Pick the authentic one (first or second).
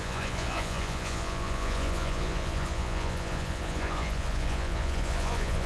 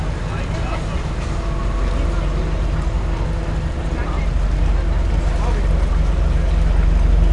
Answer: second